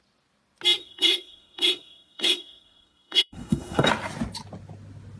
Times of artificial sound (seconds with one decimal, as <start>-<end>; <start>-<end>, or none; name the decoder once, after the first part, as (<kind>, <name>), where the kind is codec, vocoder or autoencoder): 0.8-3.9 (codec, SNAC)